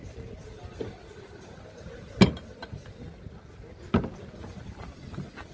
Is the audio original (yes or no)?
yes